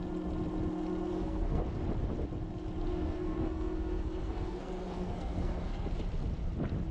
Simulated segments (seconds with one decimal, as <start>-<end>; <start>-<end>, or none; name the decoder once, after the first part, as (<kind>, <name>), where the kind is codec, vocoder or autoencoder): 1.1-1.6 (codec, SNAC); 2.9-5.9